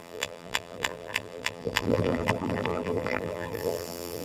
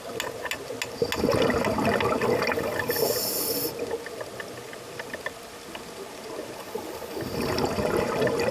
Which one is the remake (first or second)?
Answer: first